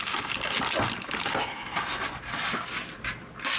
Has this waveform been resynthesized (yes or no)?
no